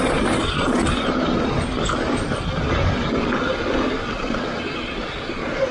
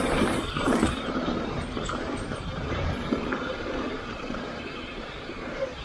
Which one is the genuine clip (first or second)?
first